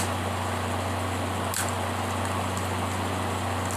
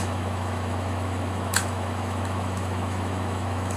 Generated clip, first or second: second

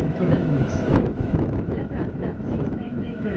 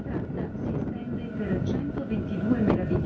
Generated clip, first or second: first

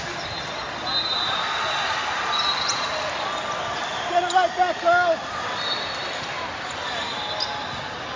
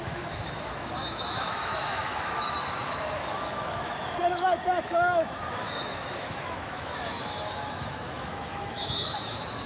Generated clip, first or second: second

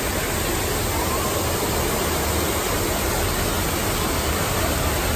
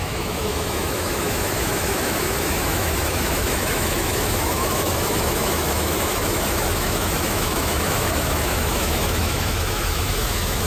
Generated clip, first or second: second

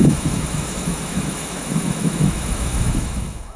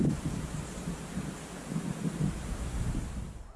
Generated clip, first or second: first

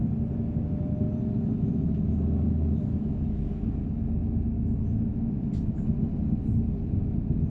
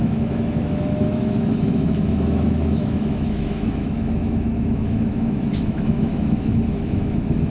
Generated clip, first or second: second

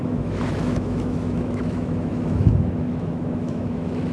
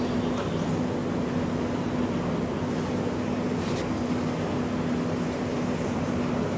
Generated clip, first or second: first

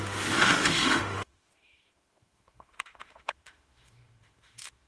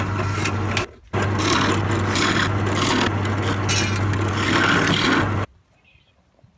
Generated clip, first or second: first